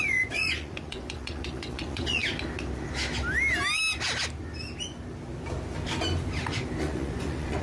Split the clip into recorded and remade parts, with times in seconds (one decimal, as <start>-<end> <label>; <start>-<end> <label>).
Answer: 0.0-2.2 remade; 2.2-6.8 recorded; 6.8-7.6 remade